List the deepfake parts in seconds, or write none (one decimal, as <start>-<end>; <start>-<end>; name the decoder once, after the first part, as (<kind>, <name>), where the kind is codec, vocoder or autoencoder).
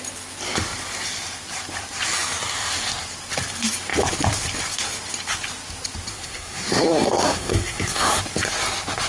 6.1-8.2 (codec, SNAC)